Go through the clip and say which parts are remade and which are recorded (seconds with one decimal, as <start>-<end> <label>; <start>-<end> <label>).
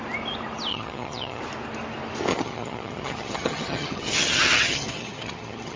0.0-0.7 recorded; 0.7-1.4 remade; 1.4-2.3 recorded; 2.3-5.8 remade